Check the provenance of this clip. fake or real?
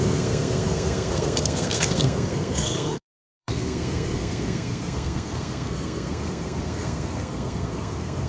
fake